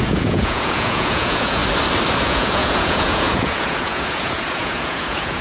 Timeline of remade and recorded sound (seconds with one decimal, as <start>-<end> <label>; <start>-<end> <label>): 0.0-1.6 remade; 1.6-2.2 recorded; 2.2-5.4 remade

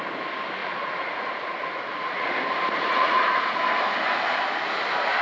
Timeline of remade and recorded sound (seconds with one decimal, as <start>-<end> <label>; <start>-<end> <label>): 0.0-0.6 recorded; 0.6-2.3 remade; 2.3-2.9 recorded; 2.9-3.6 remade; 3.6-5.2 recorded

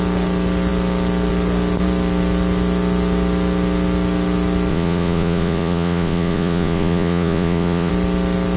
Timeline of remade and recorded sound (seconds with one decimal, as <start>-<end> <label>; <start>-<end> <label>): 0.0-4.7 recorded; 4.7-7.9 remade; 7.9-8.6 recorded

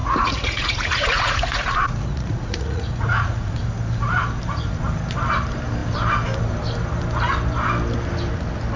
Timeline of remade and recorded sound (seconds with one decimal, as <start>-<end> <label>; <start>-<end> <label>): 0.0-3.5 remade; 3.5-8.8 recorded

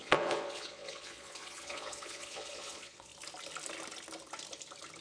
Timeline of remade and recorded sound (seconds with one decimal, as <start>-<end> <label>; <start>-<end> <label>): 0.0-3.1 remade; 3.1-5.0 recorded

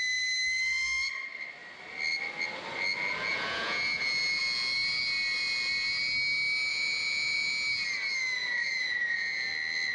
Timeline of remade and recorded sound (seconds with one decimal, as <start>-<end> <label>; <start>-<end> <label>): 0.0-3.3 recorded; 3.3-4.4 remade; 4.4-6.7 recorded; 6.7-7.5 remade; 7.5-8.4 recorded; 8.4-9.5 remade; 9.5-9.9 recorded